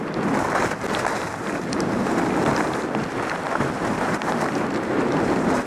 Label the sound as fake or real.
real